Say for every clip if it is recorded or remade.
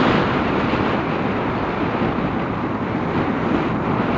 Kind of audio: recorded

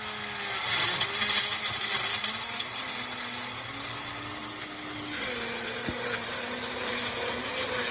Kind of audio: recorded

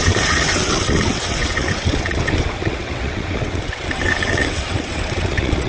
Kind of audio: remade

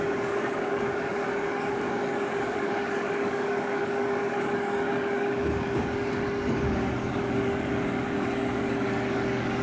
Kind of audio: remade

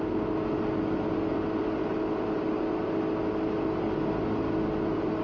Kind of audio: recorded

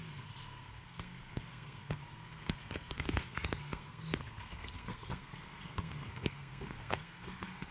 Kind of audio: remade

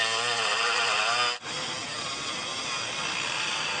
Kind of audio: recorded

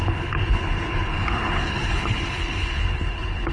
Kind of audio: remade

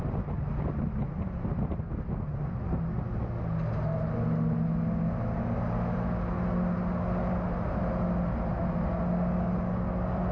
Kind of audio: recorded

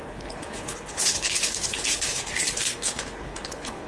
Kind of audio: remade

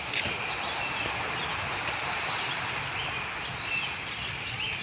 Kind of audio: recorded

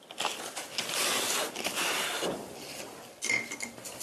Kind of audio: recorded